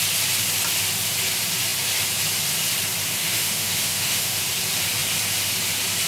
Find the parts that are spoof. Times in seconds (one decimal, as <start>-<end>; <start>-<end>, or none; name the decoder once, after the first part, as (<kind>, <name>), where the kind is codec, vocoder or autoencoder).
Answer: 3.2-4.4 (autoencoder, DAC-VAE)